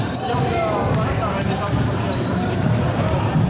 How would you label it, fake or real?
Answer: fake